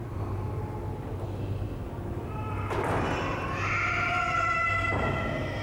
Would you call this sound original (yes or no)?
yes